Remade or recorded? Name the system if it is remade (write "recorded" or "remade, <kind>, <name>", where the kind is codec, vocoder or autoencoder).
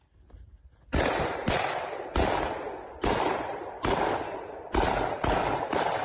remade, vocoder, BigVGAN v2